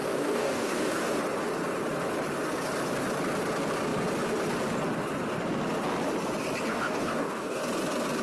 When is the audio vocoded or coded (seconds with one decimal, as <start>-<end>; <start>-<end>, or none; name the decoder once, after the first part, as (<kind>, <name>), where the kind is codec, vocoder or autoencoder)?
0.0-1.2 (codec, DAC); 6.7-7.6